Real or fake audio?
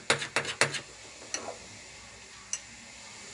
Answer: real